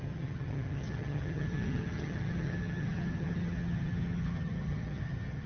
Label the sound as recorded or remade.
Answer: remade